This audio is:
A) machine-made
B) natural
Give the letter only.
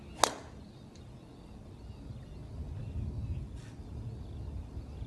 B